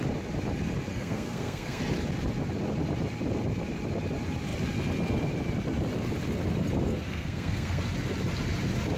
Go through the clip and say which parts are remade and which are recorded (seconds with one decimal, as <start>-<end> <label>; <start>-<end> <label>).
0.0-0.9 recorded; 0.9-1.8 remade; 1.8-6.9 recorded; 6.9-7.8 remade; 7.8-9.0 recorded